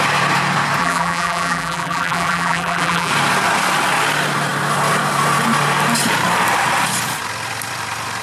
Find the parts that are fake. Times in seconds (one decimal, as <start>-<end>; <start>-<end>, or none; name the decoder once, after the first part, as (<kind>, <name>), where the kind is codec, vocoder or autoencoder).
0.8-3.1 (vocoder, BigVGAN v2)

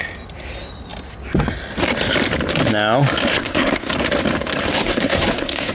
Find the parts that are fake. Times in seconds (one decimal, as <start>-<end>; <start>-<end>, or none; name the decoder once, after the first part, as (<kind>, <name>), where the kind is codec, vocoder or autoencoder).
3.3-3.9 (codec, SNAC); 4.8-5.7

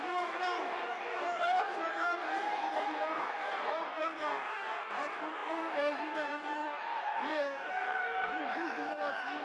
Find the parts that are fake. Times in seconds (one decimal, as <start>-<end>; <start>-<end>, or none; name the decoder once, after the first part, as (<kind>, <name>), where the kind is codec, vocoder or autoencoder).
0.0-9.4 (codec, DAC)

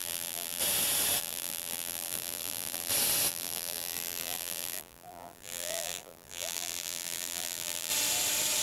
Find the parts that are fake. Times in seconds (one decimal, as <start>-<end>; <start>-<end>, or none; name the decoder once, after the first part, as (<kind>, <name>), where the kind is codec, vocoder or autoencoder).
0.0-0.6 (vocoder, BigVGAN v2); 1.2-2.9; 3.3-7.9

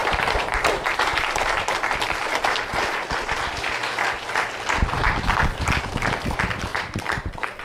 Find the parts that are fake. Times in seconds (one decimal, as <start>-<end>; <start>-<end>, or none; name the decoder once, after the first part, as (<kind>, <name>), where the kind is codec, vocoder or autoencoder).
0.0-1.4 (vocoder, BigVGAN v2); 6.7-7.6